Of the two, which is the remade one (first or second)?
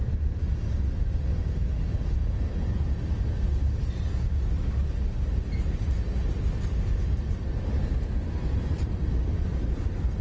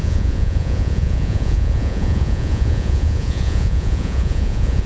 second